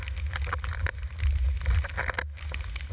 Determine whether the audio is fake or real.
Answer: real